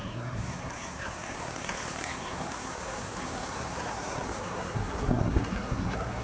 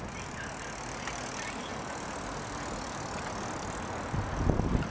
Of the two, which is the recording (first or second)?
second